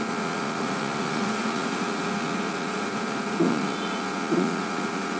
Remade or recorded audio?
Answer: remade